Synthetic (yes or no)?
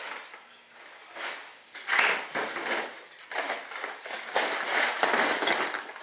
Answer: no